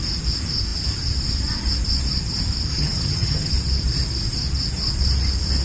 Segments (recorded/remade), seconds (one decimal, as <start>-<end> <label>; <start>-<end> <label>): 0.0-2.7 recorded; 2.7-3.5 remade; 3.5-5.6 recorded